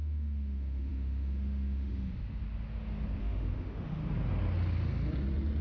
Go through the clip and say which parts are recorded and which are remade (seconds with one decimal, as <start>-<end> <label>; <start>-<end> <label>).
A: 0.0-2.4 remade; 2.4-3.2 recorded; 3.2-4.0 remade; 4.0-5.6 recorded